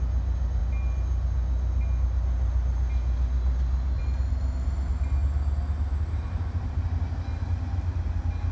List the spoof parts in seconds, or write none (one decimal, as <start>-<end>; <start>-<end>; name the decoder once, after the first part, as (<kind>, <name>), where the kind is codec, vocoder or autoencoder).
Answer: 5.9-6.8 (vocoder, BigVGAN v2); 7.3-7.9